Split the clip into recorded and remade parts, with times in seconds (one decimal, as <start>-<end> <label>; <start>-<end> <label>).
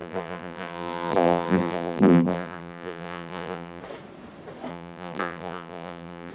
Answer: 0.0-3.8 remade; 3.8-4.7 recorded; 4.7-6.3 remade